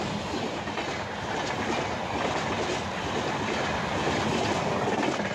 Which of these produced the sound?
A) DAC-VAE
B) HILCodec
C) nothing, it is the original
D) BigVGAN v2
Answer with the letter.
C